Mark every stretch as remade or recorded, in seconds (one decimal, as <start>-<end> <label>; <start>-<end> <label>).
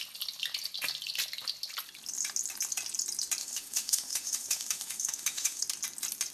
0.0-3.4 recorded; 3.4-5.6 remade; 5.6-6.3 recorded